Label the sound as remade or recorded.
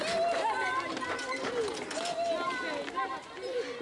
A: recorded